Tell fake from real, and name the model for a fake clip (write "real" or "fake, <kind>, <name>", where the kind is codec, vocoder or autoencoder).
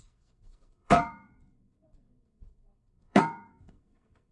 fake, codec, SNAC